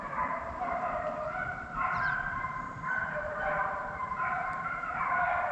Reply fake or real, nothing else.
fake